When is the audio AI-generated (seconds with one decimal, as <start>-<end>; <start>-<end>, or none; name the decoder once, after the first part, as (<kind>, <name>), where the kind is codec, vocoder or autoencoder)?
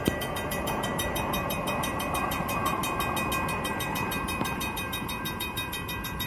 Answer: 0.0-2.8 (vocoder, BigVGAN v2); 3.5-6.3